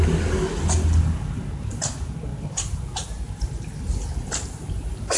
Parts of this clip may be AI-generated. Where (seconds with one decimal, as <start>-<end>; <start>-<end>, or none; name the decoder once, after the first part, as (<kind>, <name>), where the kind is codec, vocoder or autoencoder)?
none